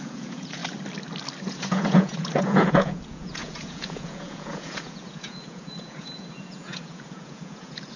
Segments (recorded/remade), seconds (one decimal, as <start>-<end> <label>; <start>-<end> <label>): 0.0-0.6 remade; 0.6-1.4 recorded; 1.4-8.0 remade